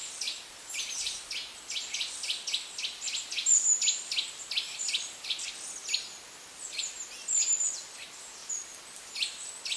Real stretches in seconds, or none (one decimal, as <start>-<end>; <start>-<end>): 0.0-9.8